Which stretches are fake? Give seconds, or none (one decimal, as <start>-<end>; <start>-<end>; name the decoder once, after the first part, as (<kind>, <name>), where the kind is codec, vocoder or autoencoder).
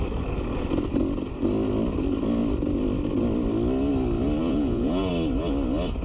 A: 4.4-5.1 (vocoder, Vocos)